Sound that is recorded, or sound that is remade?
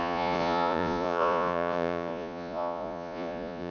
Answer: remade